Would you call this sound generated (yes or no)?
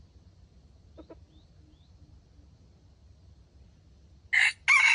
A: no